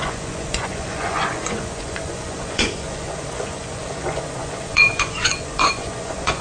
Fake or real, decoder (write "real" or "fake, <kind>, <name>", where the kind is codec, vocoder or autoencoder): fake, vocoder, Vocos